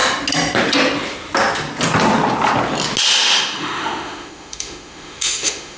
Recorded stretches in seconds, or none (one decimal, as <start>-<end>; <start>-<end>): 0.0-3.5